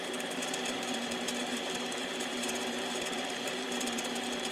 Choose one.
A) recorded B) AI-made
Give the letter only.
B